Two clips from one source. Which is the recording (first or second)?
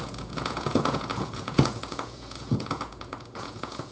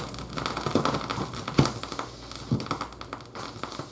second